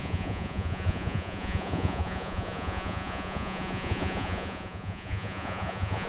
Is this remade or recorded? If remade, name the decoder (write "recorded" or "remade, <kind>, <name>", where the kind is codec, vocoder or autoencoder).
remade, vocoder, Vocos